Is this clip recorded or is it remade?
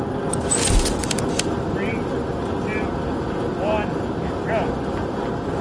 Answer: recorded